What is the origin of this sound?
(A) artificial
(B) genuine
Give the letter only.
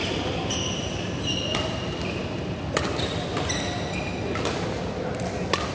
B